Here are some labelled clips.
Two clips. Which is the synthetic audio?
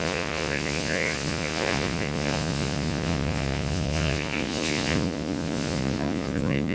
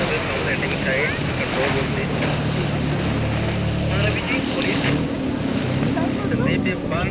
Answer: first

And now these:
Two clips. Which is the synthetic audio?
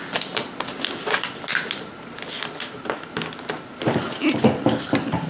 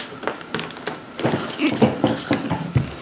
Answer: second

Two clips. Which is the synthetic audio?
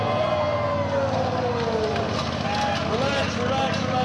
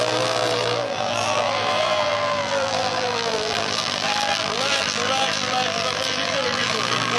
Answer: second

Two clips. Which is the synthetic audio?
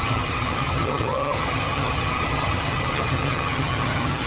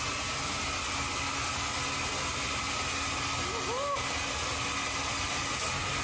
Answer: first